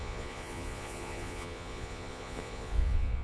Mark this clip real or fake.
fake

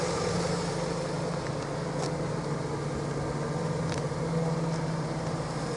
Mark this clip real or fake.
real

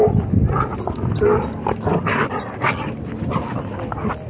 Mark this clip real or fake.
real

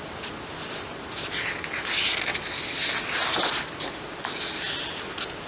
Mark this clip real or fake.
real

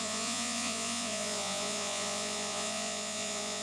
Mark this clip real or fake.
fake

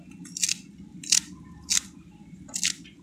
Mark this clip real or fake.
real